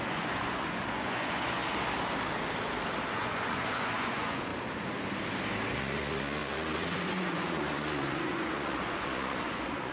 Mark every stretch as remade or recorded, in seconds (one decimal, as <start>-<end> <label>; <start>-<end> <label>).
0.0-1.6 remade; 1.6-3.1 recorded; 3.1-4.5 remade; 4.5-5.7 recorded; 5.7-9.9 remade